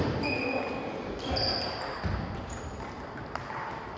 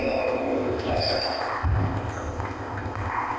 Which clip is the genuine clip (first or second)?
first